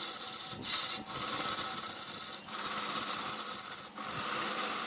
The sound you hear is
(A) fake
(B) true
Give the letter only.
B